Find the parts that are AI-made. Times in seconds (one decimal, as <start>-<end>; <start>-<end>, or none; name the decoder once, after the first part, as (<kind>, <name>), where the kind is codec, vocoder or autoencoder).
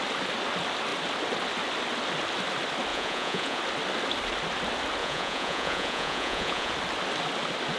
2.9-3.6 (vocoder, Vocos); 5.0-6.7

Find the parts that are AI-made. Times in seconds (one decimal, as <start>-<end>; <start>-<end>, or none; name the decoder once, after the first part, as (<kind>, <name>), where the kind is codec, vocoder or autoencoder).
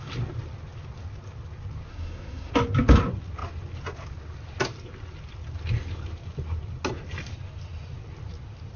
1.9-2.5 (codec, SNAC)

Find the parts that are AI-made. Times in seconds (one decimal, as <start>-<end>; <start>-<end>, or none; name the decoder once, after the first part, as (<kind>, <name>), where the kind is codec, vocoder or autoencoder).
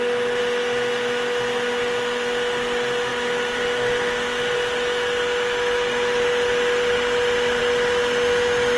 none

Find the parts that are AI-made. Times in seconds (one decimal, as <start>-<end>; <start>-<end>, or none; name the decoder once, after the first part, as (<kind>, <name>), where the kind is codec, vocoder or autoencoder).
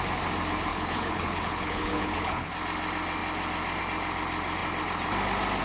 0.7-2.5 (codec, HILCodec)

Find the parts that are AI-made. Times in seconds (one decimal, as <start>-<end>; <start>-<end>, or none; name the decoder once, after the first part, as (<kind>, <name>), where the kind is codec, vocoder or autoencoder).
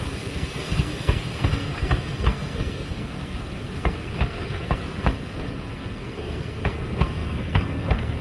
0.0-8.2 (codec, SNAC)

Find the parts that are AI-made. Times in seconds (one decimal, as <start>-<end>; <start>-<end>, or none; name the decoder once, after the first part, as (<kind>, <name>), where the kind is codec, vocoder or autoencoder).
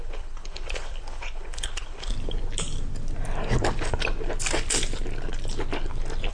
0.0-2.1 (codec, HILCodec)